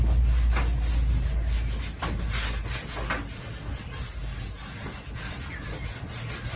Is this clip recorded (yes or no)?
yes